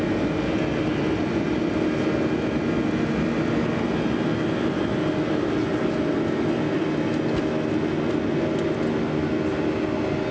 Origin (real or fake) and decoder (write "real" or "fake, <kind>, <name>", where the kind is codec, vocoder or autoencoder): real